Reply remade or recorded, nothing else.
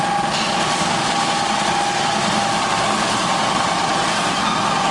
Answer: recorded